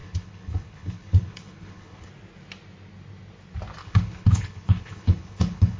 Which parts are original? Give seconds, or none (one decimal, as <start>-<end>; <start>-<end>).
2.1-3.8